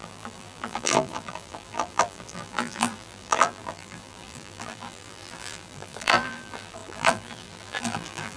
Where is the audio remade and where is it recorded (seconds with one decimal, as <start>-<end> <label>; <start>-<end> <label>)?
0.0-8.4 remade